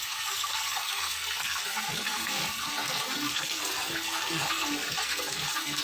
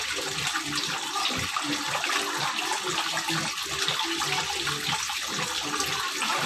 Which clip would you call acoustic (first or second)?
second